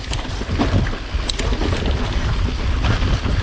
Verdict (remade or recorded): recorded